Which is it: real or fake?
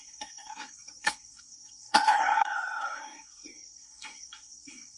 fake